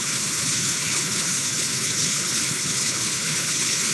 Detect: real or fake fake